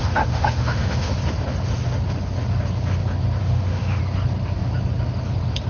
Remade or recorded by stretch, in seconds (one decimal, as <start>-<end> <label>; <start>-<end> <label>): 0.0-1.1 remade; 1.1-3.4 recorded; 3.4-4.0 remade; 4.0-5.7 recorded

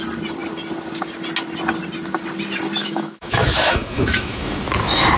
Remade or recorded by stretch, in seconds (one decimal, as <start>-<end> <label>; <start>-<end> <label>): 0.0-2.8 recorded; 2.8-4.6 remade; 4.6-5.2 recorded

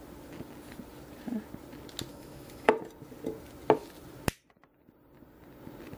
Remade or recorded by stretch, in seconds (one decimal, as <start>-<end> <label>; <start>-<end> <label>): 0.0-2.1 recorded; 2.1-2.7 remade; 2.7-6.0 recorded

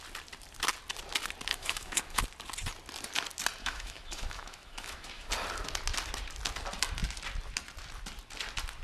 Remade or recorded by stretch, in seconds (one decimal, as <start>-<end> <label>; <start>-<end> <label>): 0.0-1.5 recorded; 1.5-2.2 remade; 2.2-3.6 recorded; 3.6-5.3 remade; 5.3-8.8 recorded

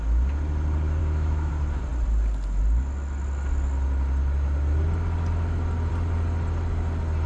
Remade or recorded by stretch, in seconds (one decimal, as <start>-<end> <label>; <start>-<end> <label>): 0.0-1.0 recorded; 1.0-1.5 remade; 1.5-7.3 recorded

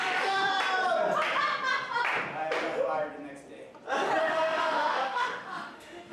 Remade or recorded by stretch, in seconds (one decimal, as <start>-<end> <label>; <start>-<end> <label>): 0.0-0.5 remade; 0.5-4.2 recorded; 4.2-6.1 remade

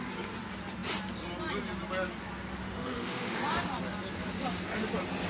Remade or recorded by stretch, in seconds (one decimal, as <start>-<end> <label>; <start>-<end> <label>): 0.0-2.6 recorded; 2.6-3.4 remade; 3.4-5.3 recorded